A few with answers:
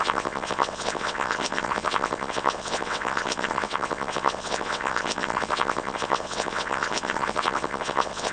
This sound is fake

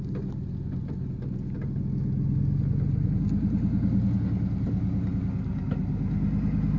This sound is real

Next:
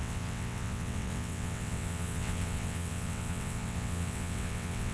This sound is fake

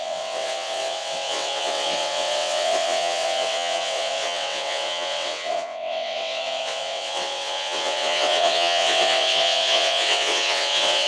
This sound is fake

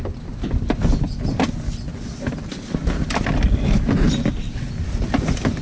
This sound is real